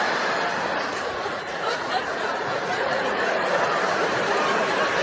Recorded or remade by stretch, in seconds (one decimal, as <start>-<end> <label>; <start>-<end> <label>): 0.0-0.7 recorded; 0.7-3.5 remade; 3.5-5.0 recorded